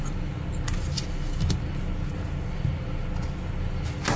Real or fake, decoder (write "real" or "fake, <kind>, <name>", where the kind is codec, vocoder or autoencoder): real